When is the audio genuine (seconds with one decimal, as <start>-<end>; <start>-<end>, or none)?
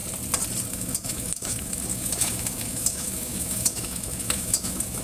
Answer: 0.0-0.7